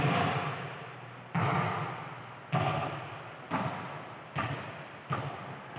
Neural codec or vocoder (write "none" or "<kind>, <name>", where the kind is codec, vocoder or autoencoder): none